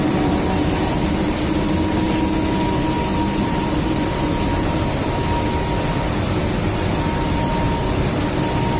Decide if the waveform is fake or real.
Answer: real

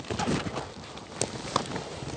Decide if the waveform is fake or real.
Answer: real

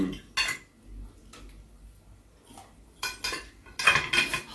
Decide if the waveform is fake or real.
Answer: real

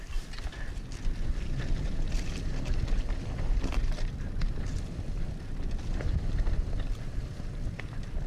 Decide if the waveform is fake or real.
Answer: real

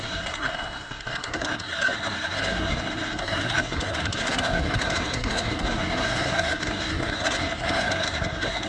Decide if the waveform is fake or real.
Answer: fake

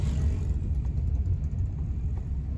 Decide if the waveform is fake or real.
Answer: real